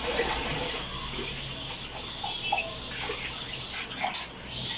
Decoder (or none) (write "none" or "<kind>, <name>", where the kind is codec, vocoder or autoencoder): none